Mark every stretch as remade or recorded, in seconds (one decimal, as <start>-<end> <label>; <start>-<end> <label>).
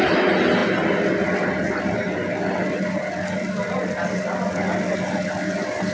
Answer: 0.0-5.9 recorded